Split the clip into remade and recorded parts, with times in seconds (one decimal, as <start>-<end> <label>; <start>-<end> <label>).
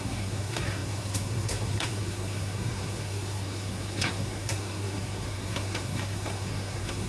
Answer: 0.0-7.1 remade